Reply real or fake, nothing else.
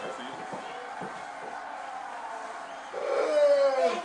real